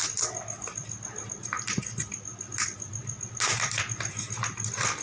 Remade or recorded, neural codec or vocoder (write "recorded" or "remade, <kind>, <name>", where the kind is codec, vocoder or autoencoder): recorded